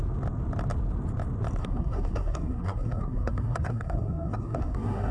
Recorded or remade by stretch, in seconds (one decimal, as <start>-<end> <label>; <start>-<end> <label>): 0.0-1.6 recorded; 1.6-5.1 remade